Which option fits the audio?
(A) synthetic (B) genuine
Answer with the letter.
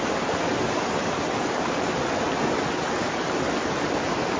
B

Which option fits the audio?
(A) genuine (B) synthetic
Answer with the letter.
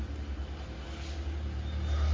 A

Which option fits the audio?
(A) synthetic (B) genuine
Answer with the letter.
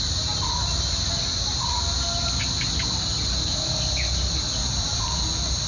B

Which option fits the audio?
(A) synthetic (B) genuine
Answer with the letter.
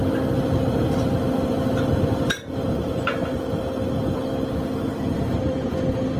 B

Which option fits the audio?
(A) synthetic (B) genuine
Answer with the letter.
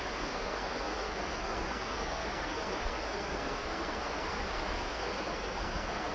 A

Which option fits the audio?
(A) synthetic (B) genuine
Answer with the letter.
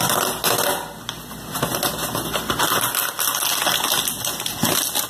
B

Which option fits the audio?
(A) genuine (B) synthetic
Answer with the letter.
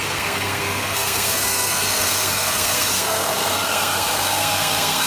B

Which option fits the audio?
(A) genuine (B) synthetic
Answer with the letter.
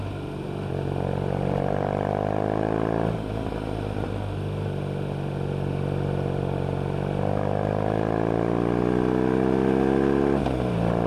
A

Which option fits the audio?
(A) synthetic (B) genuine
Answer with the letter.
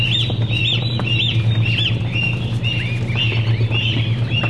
B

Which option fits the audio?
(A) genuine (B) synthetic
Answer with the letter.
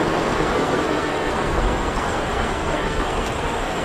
B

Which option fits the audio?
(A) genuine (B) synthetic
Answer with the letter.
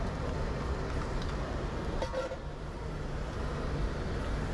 A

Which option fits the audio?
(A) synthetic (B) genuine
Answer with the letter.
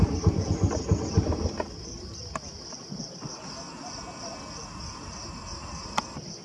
B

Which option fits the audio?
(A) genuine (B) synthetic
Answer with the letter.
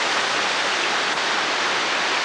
A